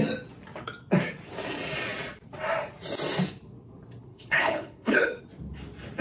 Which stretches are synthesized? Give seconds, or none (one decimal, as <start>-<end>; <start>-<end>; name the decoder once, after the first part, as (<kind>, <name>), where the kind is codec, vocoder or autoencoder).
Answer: 4.1-5.2 (codec, HILCodec)